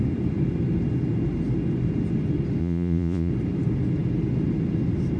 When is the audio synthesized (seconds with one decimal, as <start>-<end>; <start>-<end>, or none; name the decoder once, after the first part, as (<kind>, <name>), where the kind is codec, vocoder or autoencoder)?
2.6-3.3 (vocoder, Vocos)